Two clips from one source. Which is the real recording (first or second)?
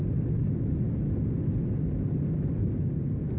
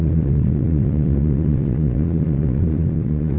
first